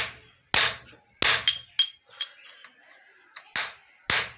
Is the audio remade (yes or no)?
no